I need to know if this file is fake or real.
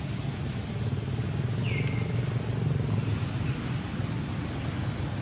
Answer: real